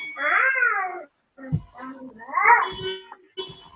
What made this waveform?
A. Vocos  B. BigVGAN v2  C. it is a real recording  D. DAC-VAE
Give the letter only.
C